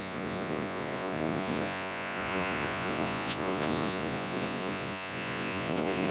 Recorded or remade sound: remade